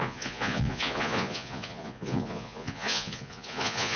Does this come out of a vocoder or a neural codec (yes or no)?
yes